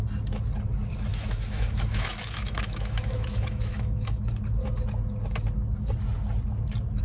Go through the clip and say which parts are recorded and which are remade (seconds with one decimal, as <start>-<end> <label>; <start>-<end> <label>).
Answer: 0.0-1.1 recorded; 1.1-4.3 remade; 4.3-7.0 recorded